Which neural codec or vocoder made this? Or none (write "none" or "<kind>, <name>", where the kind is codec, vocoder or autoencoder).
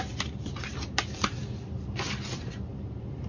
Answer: none